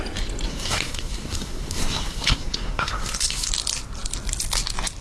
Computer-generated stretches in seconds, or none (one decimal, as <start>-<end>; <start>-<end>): 0.5-3.5